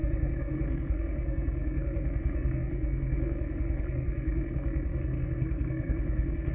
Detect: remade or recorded remade